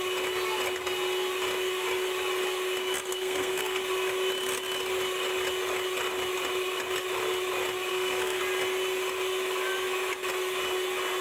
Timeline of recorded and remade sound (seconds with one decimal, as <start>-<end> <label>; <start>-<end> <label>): 0.0-3.1 recorded; 3.1-3.8 remade; 3.8-7.9 recorded; 7.9-8.4 remade; 8.4-11.2 recorded